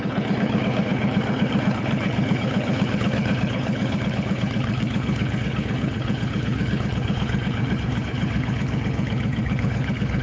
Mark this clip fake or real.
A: fake